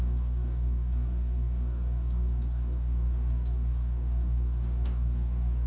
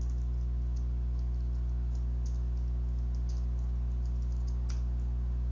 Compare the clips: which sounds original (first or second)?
second